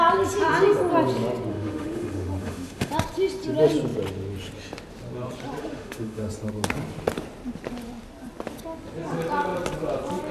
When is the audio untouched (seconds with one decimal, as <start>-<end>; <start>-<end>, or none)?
0.0-1.5; 2.9-5.6; 6.3-10.3